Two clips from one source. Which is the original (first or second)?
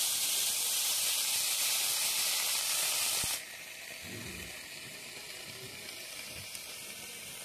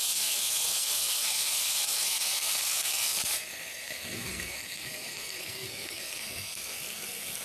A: first